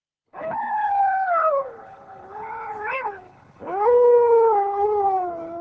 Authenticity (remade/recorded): remade